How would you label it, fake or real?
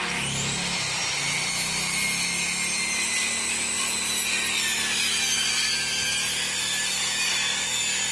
real